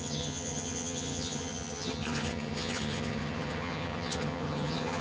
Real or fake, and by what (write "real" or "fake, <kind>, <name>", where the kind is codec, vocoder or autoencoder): fake, vocoder, HiFi-GAN